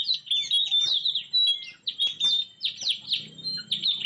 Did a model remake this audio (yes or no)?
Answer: no